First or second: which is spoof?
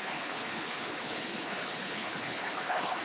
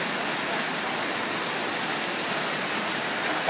first